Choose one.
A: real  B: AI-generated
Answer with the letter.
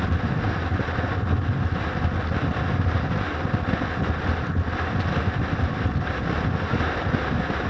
A